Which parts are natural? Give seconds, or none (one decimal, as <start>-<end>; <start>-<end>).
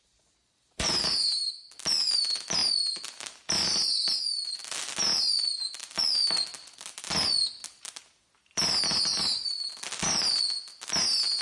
0.0-11.4